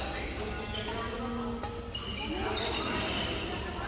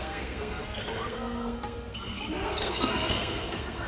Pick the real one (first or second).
first